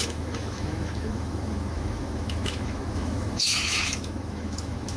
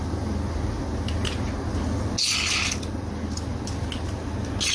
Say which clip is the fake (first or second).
first